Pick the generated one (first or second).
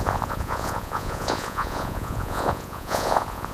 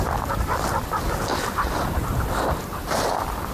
first